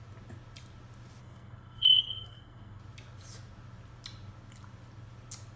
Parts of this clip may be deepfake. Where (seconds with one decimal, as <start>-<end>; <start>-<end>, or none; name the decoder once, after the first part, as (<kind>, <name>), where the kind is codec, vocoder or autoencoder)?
1.2-2.8 (codec, SNAC)